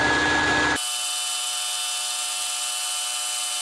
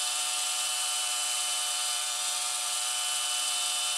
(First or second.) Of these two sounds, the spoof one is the second